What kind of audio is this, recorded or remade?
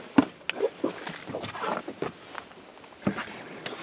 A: recorded